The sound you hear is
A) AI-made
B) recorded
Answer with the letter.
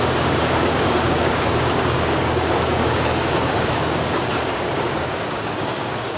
A